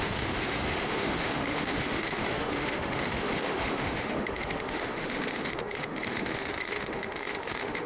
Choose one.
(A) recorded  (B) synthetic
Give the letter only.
B